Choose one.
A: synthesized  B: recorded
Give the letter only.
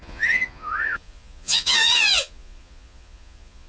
A